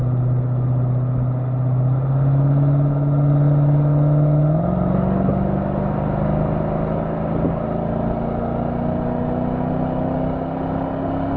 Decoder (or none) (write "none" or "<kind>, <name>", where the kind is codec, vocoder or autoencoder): none